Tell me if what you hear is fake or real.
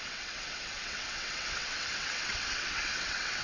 fake